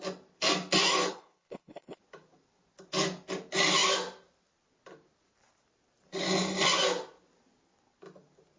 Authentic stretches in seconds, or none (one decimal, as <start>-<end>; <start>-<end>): 0.0-1.1; 2.0-8.6